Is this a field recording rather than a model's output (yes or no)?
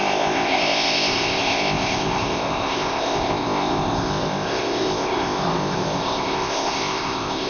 no